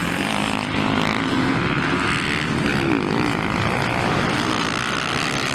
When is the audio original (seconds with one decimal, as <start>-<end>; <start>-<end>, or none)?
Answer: 2.7-4.1

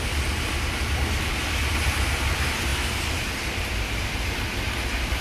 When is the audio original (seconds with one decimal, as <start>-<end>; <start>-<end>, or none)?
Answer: 2.7-3.5

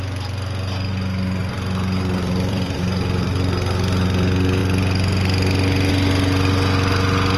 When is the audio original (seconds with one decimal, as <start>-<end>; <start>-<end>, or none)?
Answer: 0.0-1.4; 3.3-4.6; 5.9-7.4

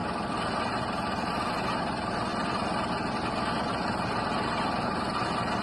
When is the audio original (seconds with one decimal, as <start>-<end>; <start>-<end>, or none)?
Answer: 0.0-0.6; 2.3-4.2

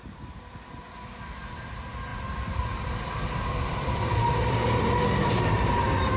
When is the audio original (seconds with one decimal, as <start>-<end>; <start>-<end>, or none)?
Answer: 0.0-2.1; 5.7-6.2

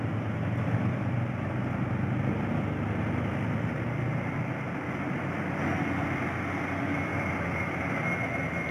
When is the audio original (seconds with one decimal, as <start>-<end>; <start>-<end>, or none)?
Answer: 0.0-7.1; 7.9-8.7